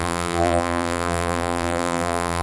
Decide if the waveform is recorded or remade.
remade